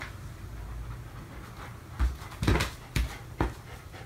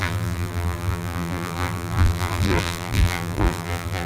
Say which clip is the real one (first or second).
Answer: first